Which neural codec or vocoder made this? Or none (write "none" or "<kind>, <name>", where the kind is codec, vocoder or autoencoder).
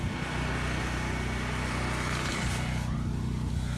none